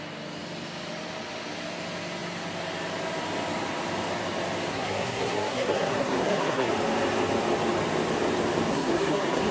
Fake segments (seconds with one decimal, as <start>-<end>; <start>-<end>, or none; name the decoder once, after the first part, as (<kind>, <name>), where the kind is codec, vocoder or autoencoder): 4.7-6.7 (codec, SNAC); 8.7-9.5